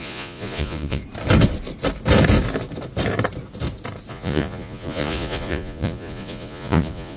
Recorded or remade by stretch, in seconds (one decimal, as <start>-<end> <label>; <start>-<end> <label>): 0.0-1.0 remade; 1.0-4.1 recorded; 4.1-7.2 remade